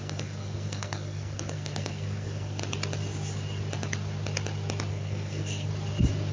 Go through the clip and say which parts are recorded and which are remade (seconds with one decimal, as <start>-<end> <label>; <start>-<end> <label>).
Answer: 0.0-2.6 remade; 2.6-4.9 recorded; 4.9-5.7 remade; 5.7-6.3 recorded